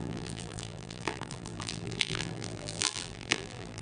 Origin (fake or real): fake